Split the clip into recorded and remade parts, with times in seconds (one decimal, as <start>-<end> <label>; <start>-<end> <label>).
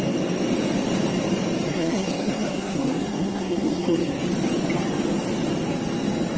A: 0.0-1.7 recorded; 1.7-4.2 remade; 4.2-6.4 recorded